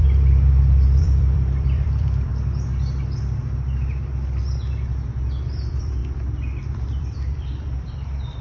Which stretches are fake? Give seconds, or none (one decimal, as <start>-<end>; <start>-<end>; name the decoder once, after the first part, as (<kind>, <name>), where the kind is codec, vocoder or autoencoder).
0.0-2.3 (vocoder, BigVGAN v2); 5.2-6.0; 6.9-8.4

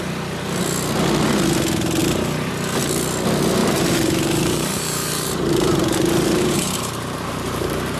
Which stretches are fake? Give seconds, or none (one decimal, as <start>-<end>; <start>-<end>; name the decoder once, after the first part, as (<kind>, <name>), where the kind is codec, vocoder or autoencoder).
3.6-8.0 (vocoder, BigVGAN v2)

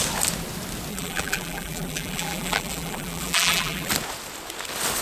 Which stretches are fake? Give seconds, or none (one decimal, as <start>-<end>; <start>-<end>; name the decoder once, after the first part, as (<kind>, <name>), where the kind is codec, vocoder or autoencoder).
0.9-3.9 (vocoder, BigVGAN v2)

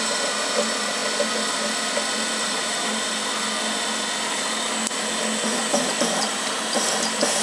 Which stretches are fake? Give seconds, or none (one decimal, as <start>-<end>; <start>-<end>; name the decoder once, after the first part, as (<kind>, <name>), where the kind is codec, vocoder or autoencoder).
0.0-1.0 (vocoder, BigVGAN v2); 2.4-3.2; 5.6-7.4

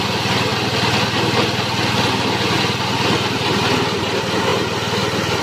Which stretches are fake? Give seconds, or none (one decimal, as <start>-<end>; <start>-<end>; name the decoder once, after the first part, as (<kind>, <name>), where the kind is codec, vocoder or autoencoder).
none

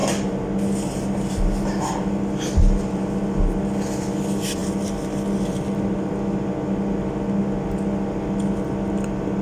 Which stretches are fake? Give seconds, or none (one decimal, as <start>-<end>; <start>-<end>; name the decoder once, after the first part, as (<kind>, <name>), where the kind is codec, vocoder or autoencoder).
none

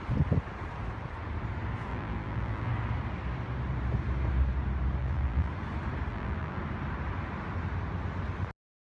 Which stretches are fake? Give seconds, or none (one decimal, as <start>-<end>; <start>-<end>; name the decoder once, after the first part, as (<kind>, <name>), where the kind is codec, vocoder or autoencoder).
1.9-2.7 (vocoder, BigVGAN v2); 5.0-5.5; 6.1-6.6

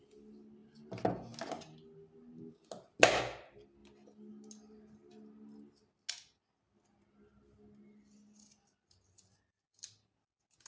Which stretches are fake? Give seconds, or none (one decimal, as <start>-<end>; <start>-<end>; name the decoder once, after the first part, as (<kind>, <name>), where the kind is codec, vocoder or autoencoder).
none